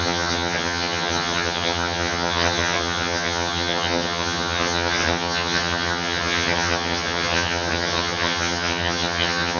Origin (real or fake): fake